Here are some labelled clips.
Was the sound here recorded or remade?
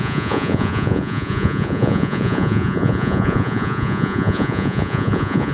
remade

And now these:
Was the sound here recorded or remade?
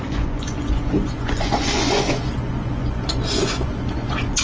remade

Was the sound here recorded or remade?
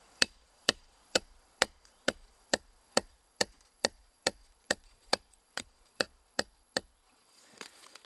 remade